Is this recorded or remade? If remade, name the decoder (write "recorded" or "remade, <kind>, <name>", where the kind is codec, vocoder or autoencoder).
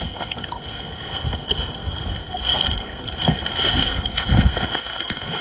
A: remade, codec, SNAC